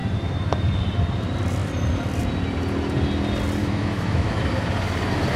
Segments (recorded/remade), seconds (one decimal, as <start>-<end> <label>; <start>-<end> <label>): 0.0-3.6 recorded; 3.6-4.4 remade; 4.4-5.4 recorded